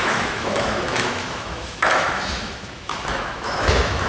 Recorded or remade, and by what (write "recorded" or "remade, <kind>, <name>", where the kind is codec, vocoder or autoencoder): remade, autoencoder, DAC-VAE